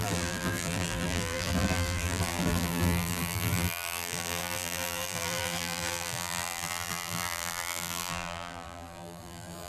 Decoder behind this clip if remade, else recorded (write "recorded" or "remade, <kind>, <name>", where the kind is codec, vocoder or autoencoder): remade, vocoder, BigVGAN v2